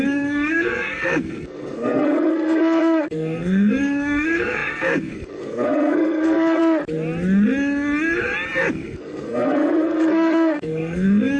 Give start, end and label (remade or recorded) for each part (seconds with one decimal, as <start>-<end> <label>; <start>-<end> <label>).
0.0-6.6 remade; 6.6-8.7 recorded; 8.7-11.4 remade